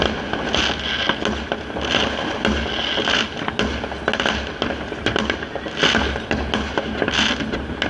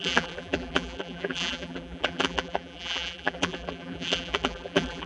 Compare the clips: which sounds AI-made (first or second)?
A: second